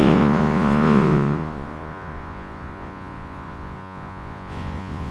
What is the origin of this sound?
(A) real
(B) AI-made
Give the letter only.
B